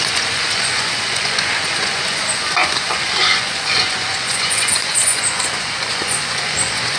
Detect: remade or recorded remade